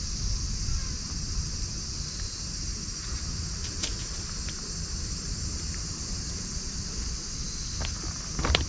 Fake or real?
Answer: real